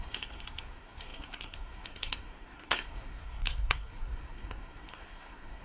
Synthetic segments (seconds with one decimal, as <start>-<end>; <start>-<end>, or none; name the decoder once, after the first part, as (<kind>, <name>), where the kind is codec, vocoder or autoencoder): 0.0-5.6 (codec, SNAC)